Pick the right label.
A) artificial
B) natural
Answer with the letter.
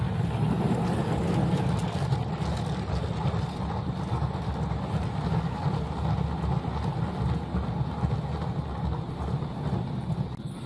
B